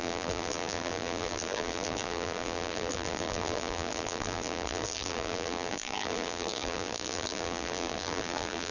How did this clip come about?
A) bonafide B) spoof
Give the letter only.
B